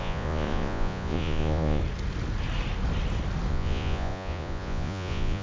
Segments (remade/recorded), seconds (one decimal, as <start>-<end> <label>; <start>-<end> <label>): 0.0-1.8 remade; 1.8-3.5 recorded; 3.5-5.4 remade